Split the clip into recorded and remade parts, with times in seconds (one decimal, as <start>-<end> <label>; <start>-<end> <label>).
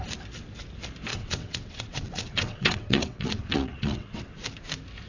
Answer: 0.0-1.1 recorded; 1.1-4.2 remade; 4.2-5.1 recorded